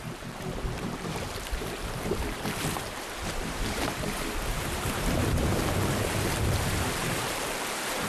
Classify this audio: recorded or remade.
remade